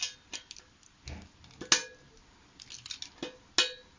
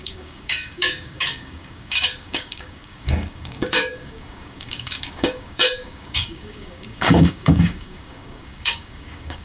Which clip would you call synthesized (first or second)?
second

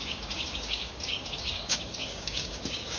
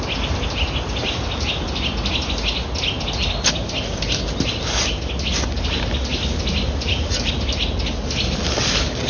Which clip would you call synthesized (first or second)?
first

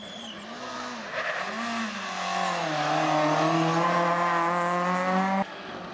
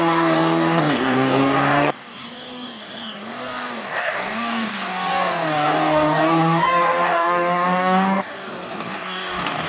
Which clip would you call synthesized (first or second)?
second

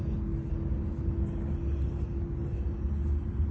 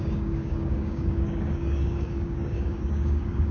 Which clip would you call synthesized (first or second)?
second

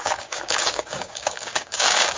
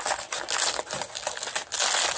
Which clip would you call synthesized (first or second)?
first